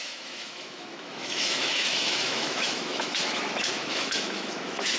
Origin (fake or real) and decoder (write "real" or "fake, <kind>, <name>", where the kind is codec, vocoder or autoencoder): fake, autoencoder, DAC-VAE